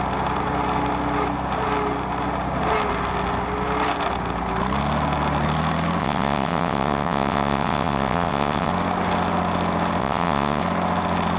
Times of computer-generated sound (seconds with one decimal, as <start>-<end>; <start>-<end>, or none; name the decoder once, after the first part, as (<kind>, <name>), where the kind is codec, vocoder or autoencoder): 6.0-8.7 (vocoder, WaveNeXt); 10.0-10.6